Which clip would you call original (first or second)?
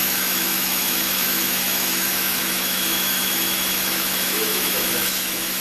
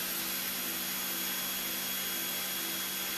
second